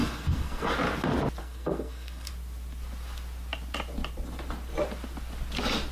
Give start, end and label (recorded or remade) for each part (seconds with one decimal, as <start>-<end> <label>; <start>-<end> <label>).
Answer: 0.0-0.7 remade; 0.7-1.4 recorded; 1.4-2.3 remade; 2.3-5.9 recorded